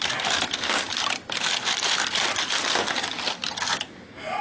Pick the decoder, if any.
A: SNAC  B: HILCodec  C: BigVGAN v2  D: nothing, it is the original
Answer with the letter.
C